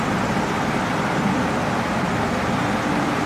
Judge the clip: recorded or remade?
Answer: recorded